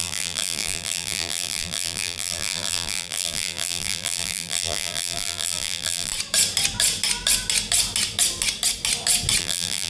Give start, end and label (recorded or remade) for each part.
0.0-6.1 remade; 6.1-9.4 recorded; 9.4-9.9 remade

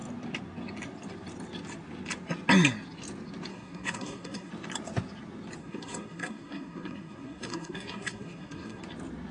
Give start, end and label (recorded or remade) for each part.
0.0-3.5 recorded; 3.5-4.5 remade; 4.5-5.6 recorded; 5.6-8.8 remade; 8.8-9.3 recorded

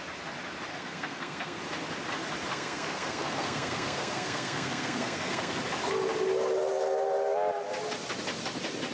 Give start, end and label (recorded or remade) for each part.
0.0-0.7 recorded; 0.7-1.6 remade; 1.6-2.5 recorded; 2.5-5.6 remade; 5.6-8.9 recorded

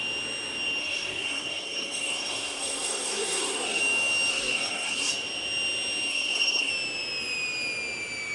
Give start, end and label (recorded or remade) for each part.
0.0-0.8 recorded; 0.8-3.8 remade; 3.8-4.3 recorded; 4.3-5.1 remade; 5.1-6.1 recorded; 6.1-6.7 remade; 6.7-8.3 recorded

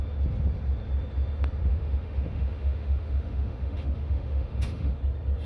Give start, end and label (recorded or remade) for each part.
0.0-1.7 recorded; 1.7-5.0 remade; 5.0-5.5 recorded